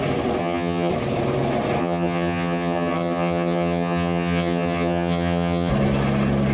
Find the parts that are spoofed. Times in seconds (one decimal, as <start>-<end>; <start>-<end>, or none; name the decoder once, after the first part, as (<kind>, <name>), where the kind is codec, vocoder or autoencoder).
0.4-0.9 (vocoder, HiFi-GAN); 1.8-5.7